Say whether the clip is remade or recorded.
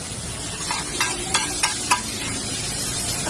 recorded